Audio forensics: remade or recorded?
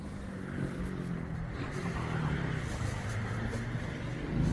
recorded